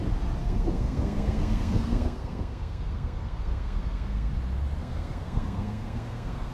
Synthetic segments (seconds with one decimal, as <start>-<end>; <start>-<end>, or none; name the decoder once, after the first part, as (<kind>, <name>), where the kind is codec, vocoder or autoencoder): 0.4-4.3 (codec, SNAC); 4.8-6.5